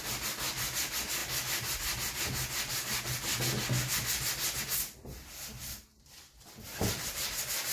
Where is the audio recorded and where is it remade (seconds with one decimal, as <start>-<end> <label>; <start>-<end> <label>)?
0.0-5.9 recorded; 5.9-7.3 remade; 7.3-7.7 recorded